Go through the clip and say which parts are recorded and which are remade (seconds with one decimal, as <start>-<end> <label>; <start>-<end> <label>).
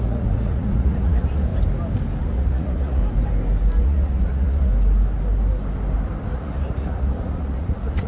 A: 0.0-1.5 remade; 1.5-2.2 recorded; 2.2-3.0 remade; 3.0-3.8 recorded; 3.8-4.7 remade; 4.7-6.3 recorded; 6.3-8.1 remade